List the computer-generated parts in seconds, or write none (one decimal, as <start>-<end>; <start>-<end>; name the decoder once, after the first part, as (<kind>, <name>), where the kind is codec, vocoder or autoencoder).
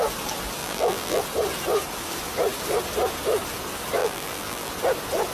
0.6-1.2 (vocoder, BigVGAN v2); 4.0-4.7